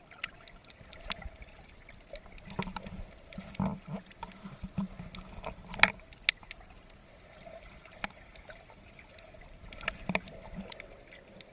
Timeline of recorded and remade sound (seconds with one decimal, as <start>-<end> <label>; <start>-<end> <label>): 0.0-11.5 recorded